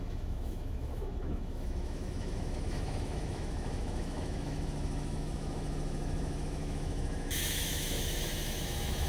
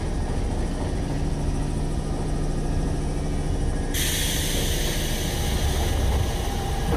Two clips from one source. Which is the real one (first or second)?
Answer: second